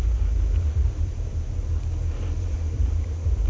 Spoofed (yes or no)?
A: yes